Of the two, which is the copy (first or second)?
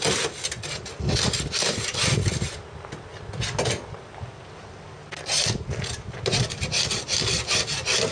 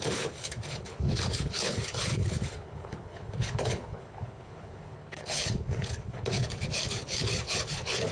second